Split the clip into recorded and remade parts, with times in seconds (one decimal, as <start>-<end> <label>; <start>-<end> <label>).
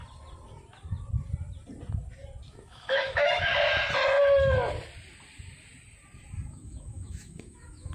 0.0-2.5 recorded; 2.5-3.5 remade; 3.5-6.5 recorded; 6.5-7.9 remade